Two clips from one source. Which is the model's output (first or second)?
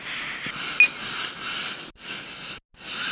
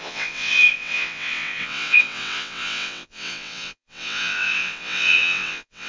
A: second